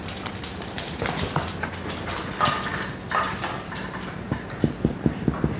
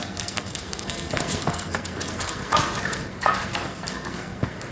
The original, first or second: first